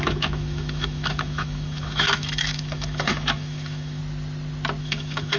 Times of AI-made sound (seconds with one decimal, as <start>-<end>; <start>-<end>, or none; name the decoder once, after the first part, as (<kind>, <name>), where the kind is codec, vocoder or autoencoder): 0.0-4.0 (autoencoder, DAC-VAE); 4.8-5.4

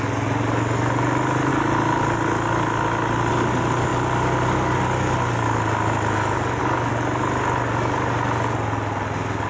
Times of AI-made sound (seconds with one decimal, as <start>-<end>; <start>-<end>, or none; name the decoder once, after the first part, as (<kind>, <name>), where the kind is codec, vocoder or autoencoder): none

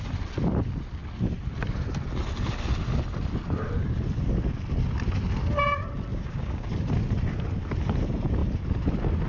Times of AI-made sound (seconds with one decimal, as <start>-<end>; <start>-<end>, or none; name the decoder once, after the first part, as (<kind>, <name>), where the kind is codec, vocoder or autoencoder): 6.1-6.7 (codec, DAC)

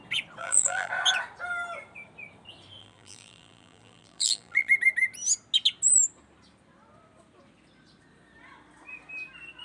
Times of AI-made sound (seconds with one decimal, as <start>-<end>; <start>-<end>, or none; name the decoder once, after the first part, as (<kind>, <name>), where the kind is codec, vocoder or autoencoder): 0.4-0.9 (vocoder, BigVGAN v2); 2.8-4.7

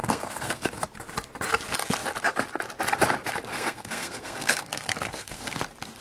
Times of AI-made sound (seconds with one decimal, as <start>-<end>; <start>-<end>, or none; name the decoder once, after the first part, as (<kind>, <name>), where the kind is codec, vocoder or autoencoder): 0.0-0.8 (codec, SNAC); 3.5-5.6

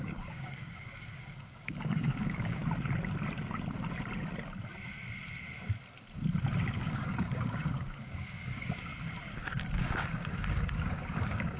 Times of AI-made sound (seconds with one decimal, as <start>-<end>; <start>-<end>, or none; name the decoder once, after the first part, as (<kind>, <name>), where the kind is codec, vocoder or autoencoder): 0.0-2.6 (codec, DAC); 6.8-8.9; 9.6-11.6